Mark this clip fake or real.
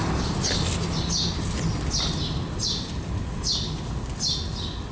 real